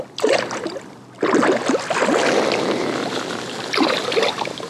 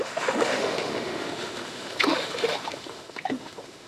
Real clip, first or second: first